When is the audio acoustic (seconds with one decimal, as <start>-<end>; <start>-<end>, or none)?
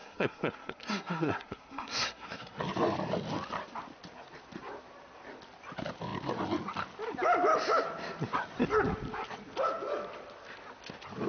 2.6-11.3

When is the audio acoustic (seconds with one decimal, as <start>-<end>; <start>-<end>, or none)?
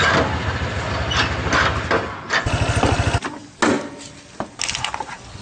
0.0-5.4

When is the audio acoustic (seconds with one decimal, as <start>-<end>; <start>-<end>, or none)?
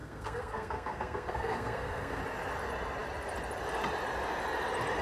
2.2-5.0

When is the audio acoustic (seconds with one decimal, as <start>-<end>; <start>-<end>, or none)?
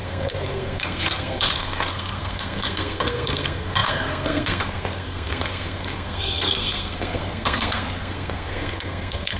none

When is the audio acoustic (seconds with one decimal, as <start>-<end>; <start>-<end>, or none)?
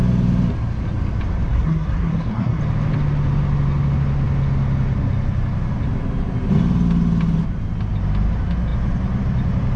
0.0-1.5; 2.6-9.8